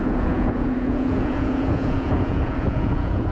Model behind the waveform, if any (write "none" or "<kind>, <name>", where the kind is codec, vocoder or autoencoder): vocoder, Vocos